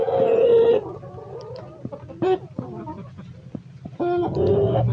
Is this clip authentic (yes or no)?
yes